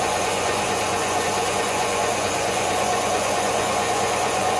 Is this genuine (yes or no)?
no